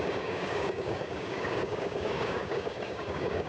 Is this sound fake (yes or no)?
yes